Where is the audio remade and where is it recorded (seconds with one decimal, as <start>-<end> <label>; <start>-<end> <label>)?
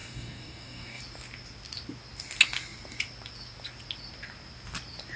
0.0-1.0 remade; 1.0-5.2 recorded